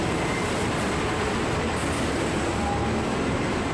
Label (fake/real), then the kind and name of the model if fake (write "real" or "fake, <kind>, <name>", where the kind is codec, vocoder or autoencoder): real